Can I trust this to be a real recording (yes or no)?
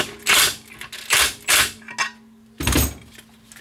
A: yes